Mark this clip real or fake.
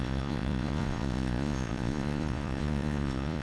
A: fake